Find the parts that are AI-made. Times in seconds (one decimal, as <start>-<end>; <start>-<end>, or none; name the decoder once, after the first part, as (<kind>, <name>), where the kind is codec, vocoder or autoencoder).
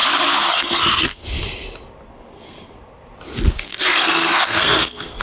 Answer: 0.5-1.2 (codec, SNAC); 2.1-2.8; 3.5-5.2